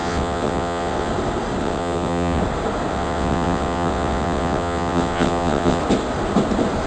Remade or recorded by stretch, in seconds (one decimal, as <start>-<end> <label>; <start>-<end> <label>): 0.0-1.1 remade; 1.1-1.6 recorded; 1.6-2.4 remade; 2.4-2.9 recorded; 2.9-5.8 remade; 5.8-6.9 recorded